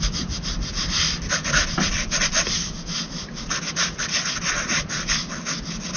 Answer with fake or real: real